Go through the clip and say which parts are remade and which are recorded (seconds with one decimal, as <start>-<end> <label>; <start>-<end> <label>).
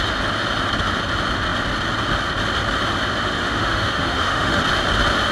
0.0-3.4 recorded; 3.4-4.6 remade; 4.6-5.3 recorded